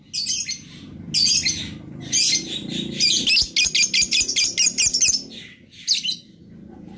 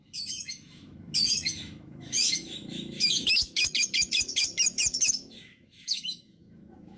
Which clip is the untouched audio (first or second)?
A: first